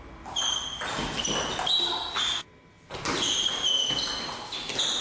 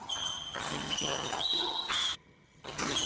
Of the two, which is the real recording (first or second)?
first